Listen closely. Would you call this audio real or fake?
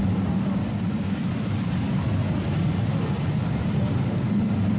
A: real